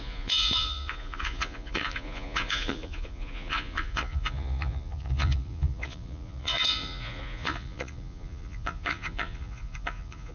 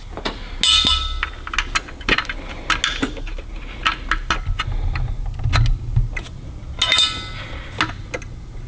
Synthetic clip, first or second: first